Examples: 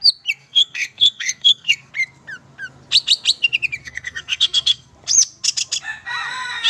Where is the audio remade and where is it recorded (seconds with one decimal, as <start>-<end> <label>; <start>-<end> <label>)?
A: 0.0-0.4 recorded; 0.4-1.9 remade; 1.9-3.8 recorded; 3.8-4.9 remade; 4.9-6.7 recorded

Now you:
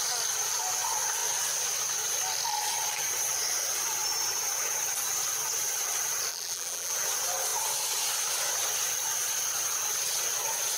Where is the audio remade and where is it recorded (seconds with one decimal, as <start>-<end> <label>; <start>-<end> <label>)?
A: 0.0-6.3 recorded; 6.3-6.9 remade; 6.9-10.8 recorded

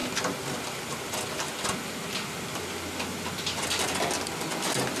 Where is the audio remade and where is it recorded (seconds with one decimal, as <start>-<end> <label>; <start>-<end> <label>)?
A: 0.0-5.0 recorded

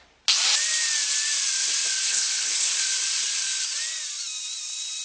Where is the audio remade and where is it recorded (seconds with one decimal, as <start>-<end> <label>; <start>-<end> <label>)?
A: 0.0-2.1 recorded; 2.1-2.8 remade; 2.8-5.0 recorded